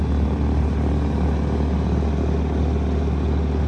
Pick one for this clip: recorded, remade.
recorded